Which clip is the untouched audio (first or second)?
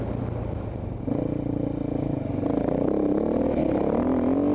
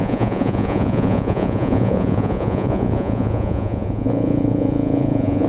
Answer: first